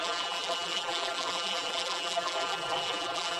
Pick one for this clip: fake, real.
fake